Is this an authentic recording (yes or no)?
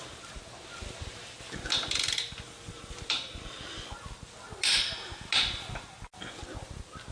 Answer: yes